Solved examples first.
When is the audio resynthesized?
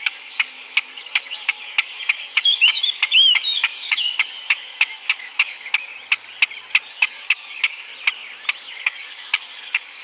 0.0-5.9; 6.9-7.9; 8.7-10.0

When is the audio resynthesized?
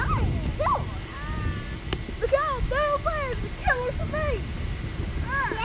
none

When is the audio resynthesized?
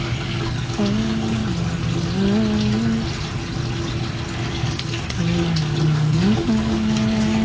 0.0-1.4; 4.5-7.4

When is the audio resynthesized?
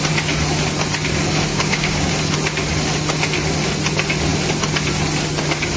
1.5-2.1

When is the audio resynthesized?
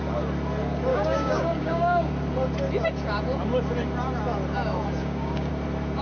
0.9-2.1; 5.0-5.5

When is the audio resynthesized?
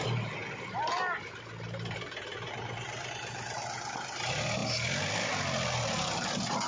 none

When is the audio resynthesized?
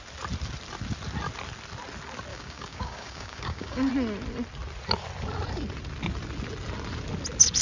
2.3-3.9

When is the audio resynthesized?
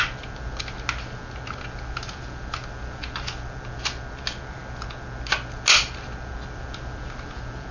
none